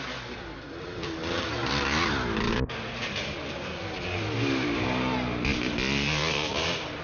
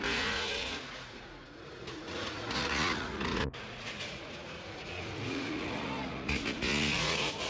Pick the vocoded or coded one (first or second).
second